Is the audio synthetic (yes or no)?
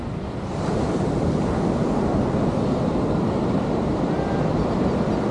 no